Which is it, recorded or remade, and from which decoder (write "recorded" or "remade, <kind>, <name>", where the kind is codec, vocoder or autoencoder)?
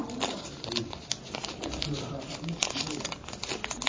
recorded